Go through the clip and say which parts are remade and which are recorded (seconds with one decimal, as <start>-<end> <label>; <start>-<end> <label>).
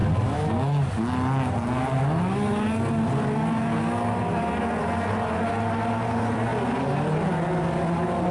0.0-8.3 recorded